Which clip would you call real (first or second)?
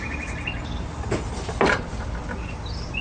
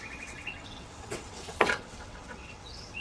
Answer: first